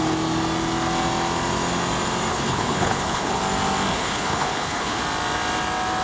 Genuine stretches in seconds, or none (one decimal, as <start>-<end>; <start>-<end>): 0.0-2.3; 3.4-3.9; 5.0-6.0